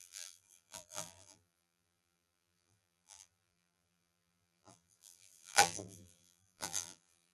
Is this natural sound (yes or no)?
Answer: no